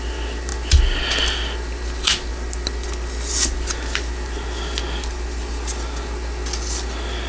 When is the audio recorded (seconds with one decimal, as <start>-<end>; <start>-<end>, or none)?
0.0-7.3